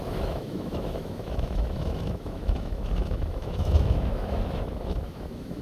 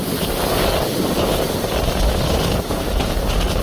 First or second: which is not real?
first